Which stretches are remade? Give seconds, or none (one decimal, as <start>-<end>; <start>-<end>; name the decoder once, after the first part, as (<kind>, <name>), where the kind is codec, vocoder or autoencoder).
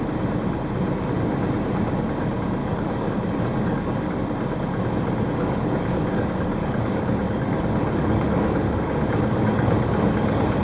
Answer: 2.6-4.2 (codec, DAC); 5.4-10.6